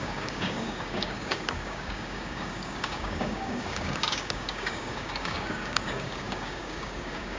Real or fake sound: fake